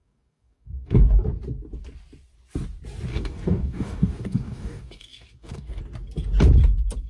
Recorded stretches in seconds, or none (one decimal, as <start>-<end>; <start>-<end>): 1.0-3.1; 5.8-7.1